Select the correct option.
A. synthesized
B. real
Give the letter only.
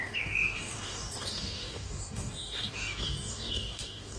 A